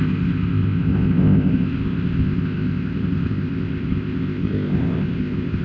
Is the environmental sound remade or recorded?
remade